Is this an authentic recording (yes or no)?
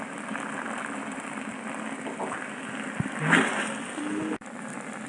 yes